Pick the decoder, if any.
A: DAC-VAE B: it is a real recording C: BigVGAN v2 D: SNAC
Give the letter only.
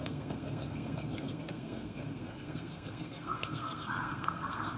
D